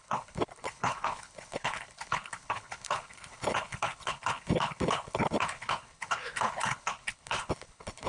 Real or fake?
fake